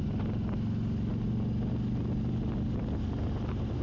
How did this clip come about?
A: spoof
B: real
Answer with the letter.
B